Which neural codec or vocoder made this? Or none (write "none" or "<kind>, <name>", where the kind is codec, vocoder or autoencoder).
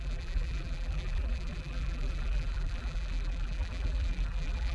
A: vocoder, BigVGAN v2